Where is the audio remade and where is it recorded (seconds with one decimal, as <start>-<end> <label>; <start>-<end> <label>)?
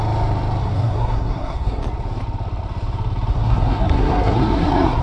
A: 0.0-0.6 recorded; 0.6-1.8 remade; 1.8-3.3 recorded; 3.3-5.0 remade